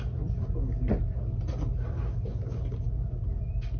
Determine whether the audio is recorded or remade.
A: recorded